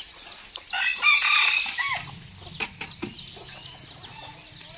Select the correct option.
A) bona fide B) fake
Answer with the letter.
A